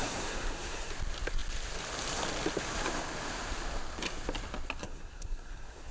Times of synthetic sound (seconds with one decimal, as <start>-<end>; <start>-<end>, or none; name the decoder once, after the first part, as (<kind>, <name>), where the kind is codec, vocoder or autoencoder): 0.0-0.9 (codec, SNAC); 4.8-5.9

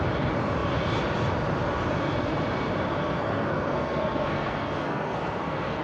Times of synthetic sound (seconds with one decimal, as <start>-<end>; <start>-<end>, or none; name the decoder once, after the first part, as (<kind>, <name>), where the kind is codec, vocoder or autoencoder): 3.0-5.8 (codec, SNAC)

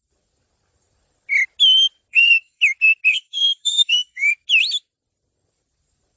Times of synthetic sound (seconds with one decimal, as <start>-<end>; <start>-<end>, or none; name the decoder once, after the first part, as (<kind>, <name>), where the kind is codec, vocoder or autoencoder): 2.1-2.6 (codec, SNAC); 3.1-4.3

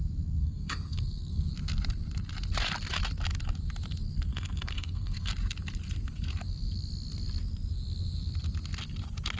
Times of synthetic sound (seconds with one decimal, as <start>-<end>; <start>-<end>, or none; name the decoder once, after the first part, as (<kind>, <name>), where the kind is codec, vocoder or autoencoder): 0.4-1.5 (codec, SNAC); 4.3-5.3

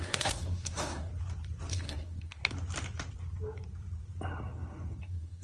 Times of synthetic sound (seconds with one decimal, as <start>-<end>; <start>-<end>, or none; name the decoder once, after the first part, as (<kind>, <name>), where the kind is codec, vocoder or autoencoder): 0.0-1.1 (codec, SNAC); 1.7-2.4; 5.0-5.4

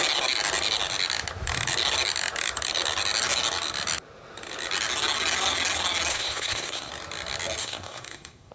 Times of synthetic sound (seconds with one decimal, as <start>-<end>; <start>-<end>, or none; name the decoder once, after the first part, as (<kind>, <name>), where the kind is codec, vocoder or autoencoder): 6.1-6.9 (codec, SNAC); 7.6-8.5